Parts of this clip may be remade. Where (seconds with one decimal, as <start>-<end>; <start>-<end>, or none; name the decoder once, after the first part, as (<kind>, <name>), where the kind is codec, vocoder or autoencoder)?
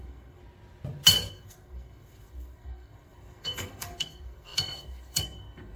0.0-0.4 (codec, SNAC); 1.3-5.8